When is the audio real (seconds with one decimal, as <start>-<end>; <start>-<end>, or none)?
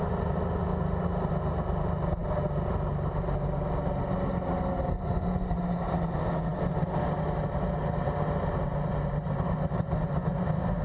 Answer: 0.0-10.8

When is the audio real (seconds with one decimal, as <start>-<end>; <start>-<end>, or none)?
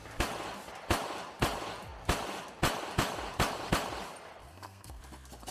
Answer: 0.0-4.4; 5.0-5.5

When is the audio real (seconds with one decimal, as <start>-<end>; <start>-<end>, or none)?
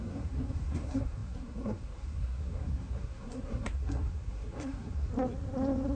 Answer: 5.1-6.0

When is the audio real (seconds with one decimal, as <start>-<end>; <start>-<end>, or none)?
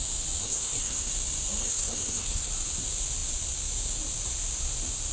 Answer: 0.0-0.4; 1.1-1.6; 2.5-5.1